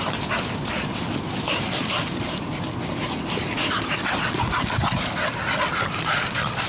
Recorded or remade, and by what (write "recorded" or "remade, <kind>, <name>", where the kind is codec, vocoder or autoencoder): recorded